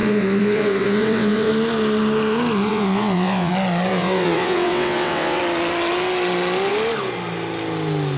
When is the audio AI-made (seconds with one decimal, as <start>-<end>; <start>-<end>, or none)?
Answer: 0.0-1.5; 2.7-3.5; 3.9-5.4

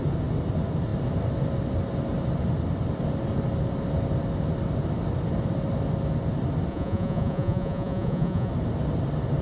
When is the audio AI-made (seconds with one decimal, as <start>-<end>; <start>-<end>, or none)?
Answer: 6.7-8.5

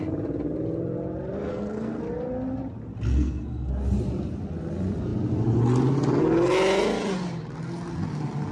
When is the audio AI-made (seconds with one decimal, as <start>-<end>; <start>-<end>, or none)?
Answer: 1.5-2.0; 3.1-3.7

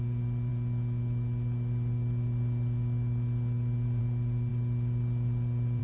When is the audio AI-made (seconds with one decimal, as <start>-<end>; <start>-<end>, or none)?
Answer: none

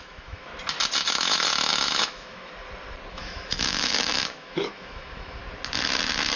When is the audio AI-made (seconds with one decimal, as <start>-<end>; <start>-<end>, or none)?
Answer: 0.0-0.5; 1.1-2.5; 3.1-5.4

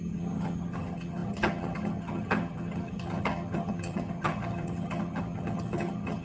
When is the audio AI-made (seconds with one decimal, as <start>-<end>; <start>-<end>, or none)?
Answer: 0.0-6.2

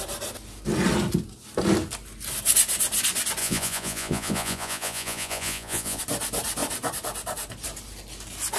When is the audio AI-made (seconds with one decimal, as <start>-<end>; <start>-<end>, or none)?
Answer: 3.4-6.0